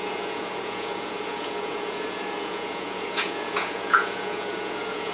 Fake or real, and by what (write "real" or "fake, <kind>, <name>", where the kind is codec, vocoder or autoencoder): fake, vocoder, Vocos